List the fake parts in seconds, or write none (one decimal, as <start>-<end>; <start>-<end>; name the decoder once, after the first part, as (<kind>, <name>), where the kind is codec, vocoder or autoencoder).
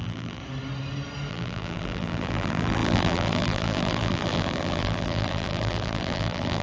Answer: 0.0-0.4 (vocoder, BigVGAN v2); 1.3-6.6